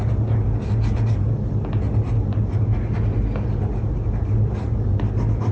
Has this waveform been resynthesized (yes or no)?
no